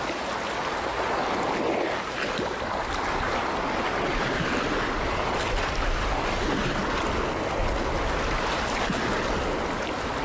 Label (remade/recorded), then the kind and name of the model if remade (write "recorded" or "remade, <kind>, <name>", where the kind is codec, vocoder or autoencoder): recorded